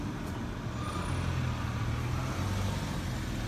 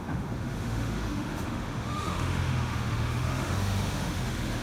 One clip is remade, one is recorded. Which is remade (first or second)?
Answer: second